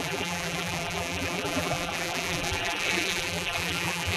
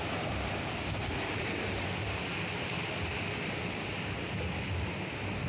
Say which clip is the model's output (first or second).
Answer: first